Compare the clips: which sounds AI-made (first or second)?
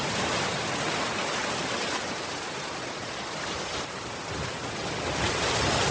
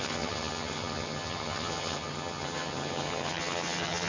second